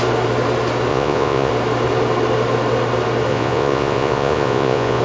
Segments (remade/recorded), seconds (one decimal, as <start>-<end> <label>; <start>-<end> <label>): 0.0-0.9 recorded; 0.9-1.5 remade; 1.5-3.3 recorded; 3.3-5.0 remade